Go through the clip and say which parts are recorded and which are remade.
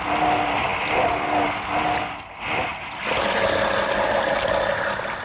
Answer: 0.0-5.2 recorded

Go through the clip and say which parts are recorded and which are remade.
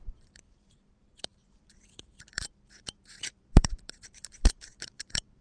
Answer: 0.0-5.4 remade